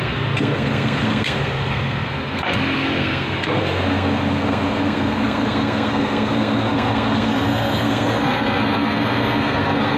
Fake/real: fake